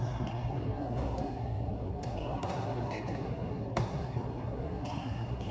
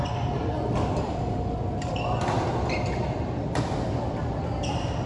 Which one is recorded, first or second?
second